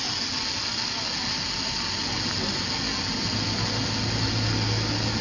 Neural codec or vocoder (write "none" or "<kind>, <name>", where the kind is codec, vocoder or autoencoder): none